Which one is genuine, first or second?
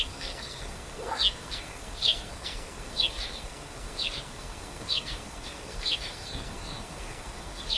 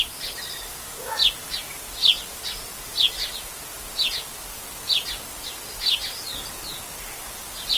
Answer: second